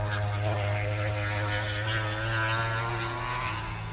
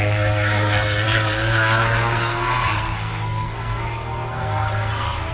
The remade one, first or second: second